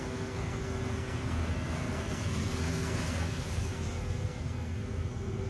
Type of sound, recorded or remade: remade